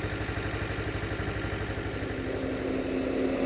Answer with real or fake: real